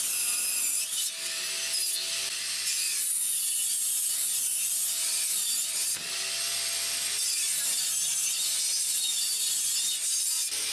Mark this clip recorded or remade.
remade